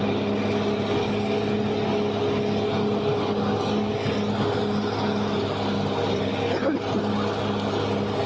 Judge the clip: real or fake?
real